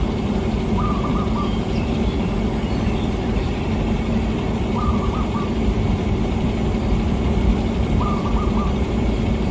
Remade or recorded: remade